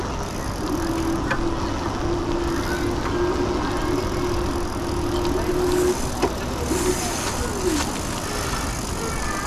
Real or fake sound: real